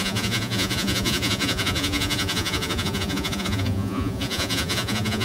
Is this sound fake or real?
fake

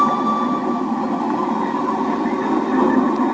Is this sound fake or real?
real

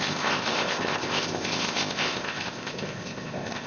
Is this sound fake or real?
fake